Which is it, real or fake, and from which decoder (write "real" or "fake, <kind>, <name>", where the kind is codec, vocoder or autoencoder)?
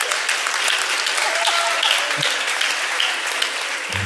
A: real